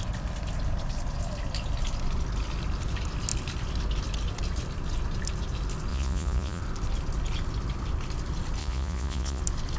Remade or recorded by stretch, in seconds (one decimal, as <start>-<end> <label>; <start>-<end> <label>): 0.0-5.9 recorded; 5.9-6.6 remade; 6.6-8.6 recorded; 8.6-9.4 remade; 9.4-9.8 recorded